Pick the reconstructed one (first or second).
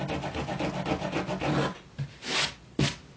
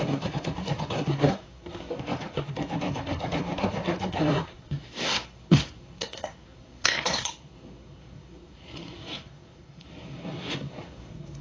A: second